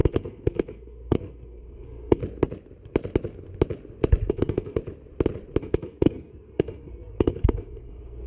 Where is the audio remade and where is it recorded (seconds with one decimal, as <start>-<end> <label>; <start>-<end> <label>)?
0.0-2.2 remade; 2.2-4.3 recorded; 4.3-4.8 remade; 4.8-5.6 recorded; 5.6-8.3 remade